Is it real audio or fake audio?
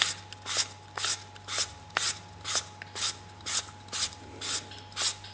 real